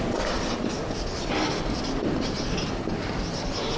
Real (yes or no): yes